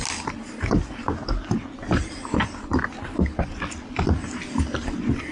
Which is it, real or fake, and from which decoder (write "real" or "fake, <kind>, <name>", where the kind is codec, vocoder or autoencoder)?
real